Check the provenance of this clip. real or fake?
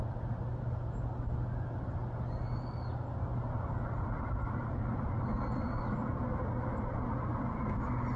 real